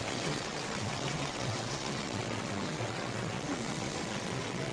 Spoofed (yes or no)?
yes